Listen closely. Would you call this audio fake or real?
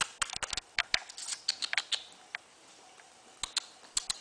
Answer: real